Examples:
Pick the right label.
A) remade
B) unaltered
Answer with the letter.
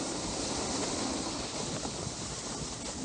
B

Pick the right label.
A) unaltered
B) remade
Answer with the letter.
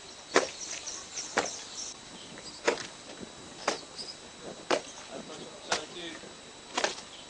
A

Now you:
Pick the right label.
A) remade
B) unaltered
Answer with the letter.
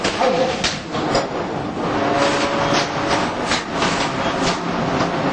B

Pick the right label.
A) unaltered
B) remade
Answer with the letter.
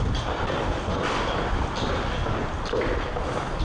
A